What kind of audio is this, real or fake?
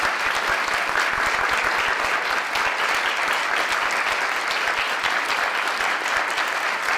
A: real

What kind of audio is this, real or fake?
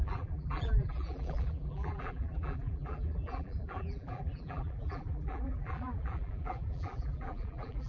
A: fake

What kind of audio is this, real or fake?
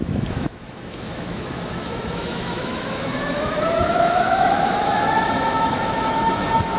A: fake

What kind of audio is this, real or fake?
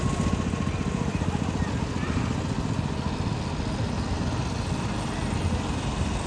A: real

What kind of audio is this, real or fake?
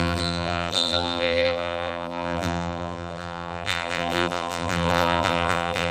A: fake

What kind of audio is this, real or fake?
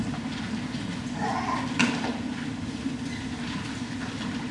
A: real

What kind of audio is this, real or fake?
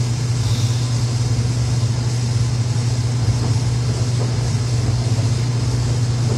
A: real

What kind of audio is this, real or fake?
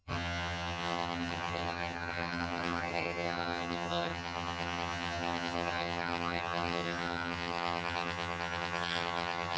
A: fake